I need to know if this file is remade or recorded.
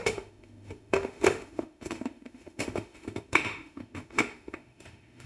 remade